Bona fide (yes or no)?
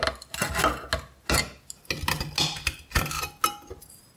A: yes